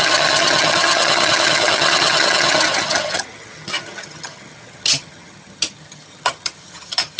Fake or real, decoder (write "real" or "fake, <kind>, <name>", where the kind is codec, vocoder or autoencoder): fake, vocoder, HiFi-GAN